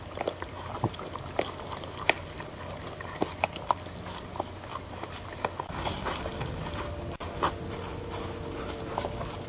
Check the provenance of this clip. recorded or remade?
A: recorded